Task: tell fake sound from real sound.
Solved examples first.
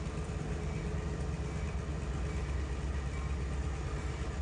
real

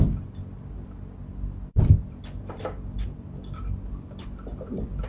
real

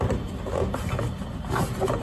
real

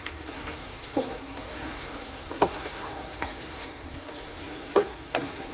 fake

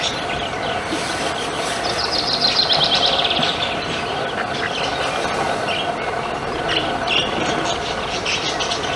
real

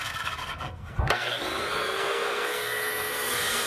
fake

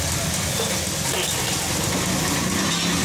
real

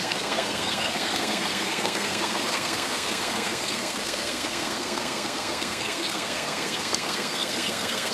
fake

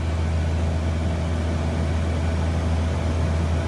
real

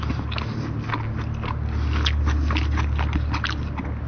real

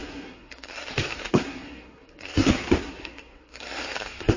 fake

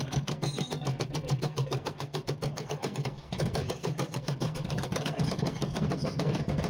fake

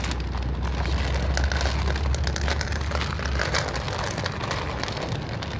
real